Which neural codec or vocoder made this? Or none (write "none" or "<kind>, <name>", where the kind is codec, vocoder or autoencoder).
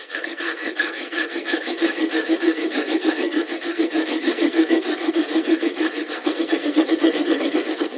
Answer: codec, SNAC